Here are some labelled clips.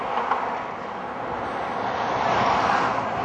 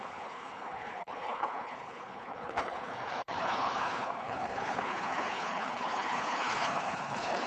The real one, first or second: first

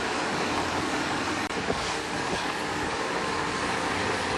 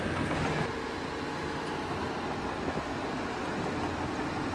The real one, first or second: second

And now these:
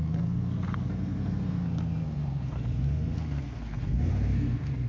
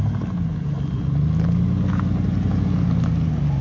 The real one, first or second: second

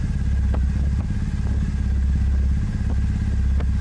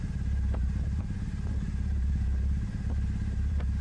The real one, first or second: first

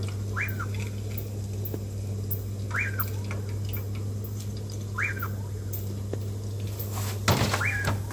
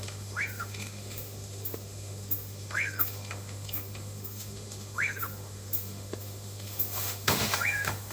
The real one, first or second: first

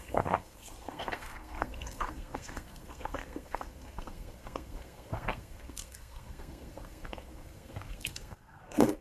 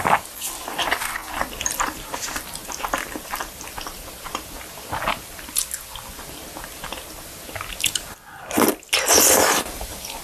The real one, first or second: second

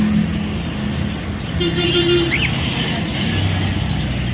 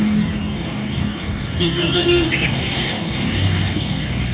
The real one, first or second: first